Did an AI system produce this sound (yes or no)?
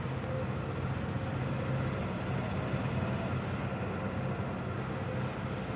no